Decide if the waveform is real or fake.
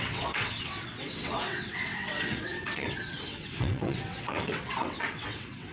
fake